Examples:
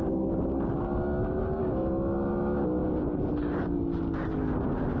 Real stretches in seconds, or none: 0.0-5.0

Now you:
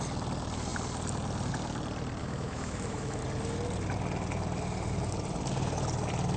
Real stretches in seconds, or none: 0.0-2.2; 3.2-6.4

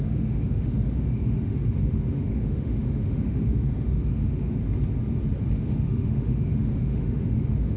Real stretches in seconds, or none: 4.5-5.6

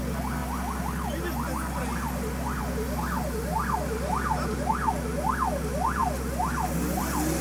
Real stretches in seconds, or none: 0.0-7.4

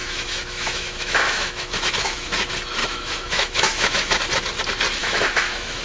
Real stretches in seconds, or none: 2.3-2.8; 4.2-5.0

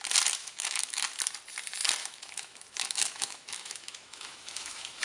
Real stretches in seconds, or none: 0.0-0.4; 1.0-2.0

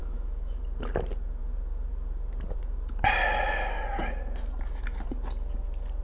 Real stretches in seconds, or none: 0.6-6.0

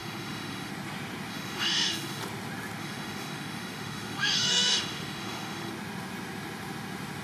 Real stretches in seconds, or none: 0.7-1.3; 2.2-2.8; 5.7-7.2